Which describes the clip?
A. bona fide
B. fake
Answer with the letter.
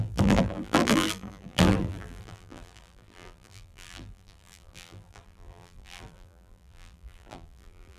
B